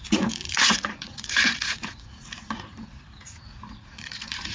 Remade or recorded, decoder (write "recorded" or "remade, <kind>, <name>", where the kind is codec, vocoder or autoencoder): remade, vocoder, Vocos